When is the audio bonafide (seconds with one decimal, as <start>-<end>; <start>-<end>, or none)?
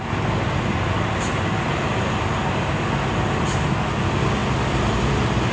0.0-5.5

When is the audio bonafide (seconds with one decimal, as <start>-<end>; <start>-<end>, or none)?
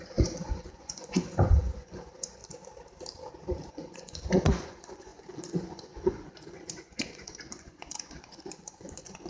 2.4-3.7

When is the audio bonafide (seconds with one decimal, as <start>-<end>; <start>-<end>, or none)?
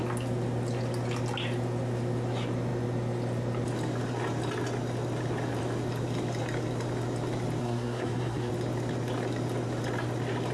0.0-7.6; 8.5-10.5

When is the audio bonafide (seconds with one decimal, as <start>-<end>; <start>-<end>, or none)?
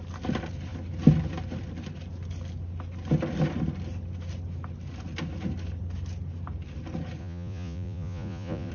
0.0-7.2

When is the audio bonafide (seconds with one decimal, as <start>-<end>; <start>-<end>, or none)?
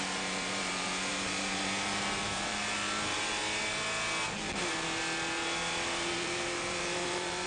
3.4-6.1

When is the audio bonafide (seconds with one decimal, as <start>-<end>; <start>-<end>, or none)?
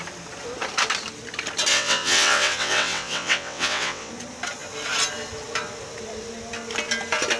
0.0-1.7; 4.1-7.4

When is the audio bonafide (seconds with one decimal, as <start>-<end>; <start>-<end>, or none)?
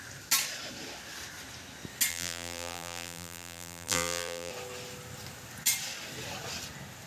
0.0-2.1; 4.5-7.1